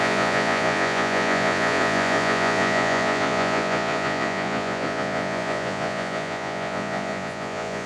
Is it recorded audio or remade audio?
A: remade